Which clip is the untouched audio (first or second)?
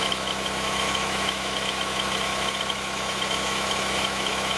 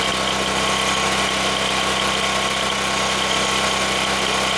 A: second